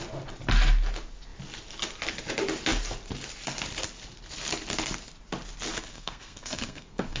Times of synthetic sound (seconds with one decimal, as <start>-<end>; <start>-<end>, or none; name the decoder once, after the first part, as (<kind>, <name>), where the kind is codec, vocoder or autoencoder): 5.9-7.2 (codec, SNAC)